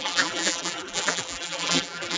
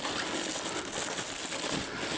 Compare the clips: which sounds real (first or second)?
second